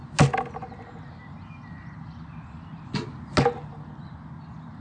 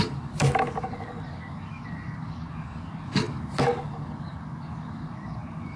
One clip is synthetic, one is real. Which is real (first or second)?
first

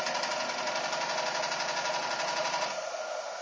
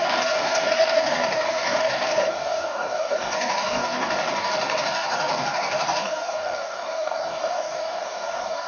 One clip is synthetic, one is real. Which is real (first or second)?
first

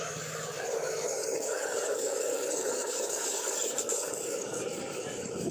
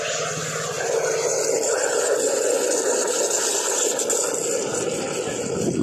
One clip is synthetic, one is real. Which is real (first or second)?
second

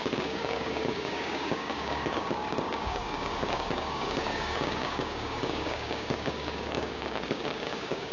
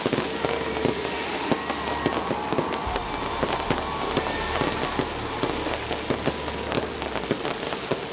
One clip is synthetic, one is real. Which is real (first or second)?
second